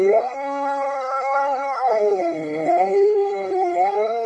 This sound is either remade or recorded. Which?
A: remade